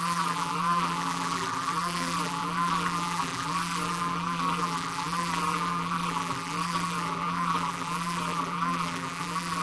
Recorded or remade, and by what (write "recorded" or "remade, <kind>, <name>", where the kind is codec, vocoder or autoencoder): remade, vocoder, BigVGAN v2